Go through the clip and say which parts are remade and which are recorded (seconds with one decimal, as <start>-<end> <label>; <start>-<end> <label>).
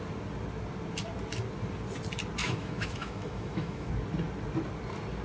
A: 0.0-2.4 recorded; 2.4-3.9 remade; 3.9-5.2 recorded